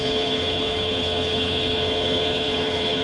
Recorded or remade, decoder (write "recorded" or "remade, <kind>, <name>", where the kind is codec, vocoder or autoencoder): remade, codec, HILCodec